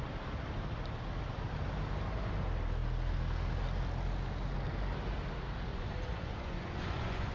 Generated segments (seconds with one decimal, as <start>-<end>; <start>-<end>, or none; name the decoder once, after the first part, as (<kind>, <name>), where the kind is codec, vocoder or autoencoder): 5.7-7.3 (vocoder, Vocos)